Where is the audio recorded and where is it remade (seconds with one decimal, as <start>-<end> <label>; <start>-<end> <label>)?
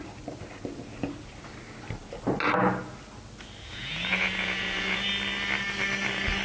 0.0-3.7 recorded; 3.7-5.1 remade; 5.1-6.4 recorded